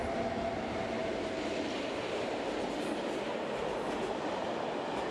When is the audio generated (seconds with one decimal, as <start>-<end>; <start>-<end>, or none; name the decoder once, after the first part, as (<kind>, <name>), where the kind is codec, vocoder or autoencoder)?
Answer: none

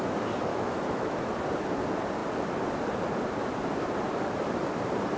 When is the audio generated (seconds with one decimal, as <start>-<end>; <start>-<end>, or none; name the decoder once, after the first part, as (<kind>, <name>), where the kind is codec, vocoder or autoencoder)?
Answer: 0.5-1.3 (autoencoder, DAC-VAE)

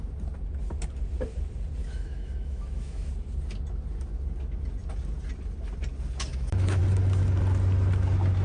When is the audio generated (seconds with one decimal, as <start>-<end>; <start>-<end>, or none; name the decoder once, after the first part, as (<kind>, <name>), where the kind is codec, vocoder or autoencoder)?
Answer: 1.8-3.1 (autoencoder, DAC-VAE); 6.3-6.8